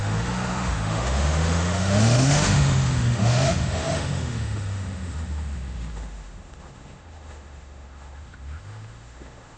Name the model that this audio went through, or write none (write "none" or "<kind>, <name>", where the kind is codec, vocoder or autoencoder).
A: autoencoder, DAC-VAE